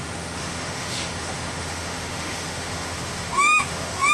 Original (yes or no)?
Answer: no